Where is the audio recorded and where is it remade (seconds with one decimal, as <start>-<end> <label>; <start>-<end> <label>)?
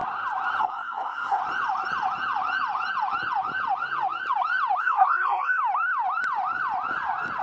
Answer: 0.0-0.6 recorded; 0.6-1.4 remade; 1.4-4.8 recorded; 4.8-5.6 remade; 5.6-7.4 recorded